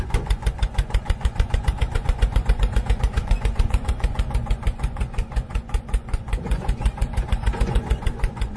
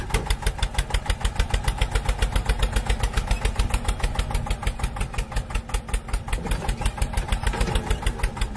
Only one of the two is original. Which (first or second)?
second